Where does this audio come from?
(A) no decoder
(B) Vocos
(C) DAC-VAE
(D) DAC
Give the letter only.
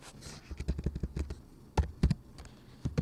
A